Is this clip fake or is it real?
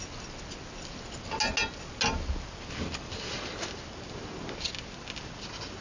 real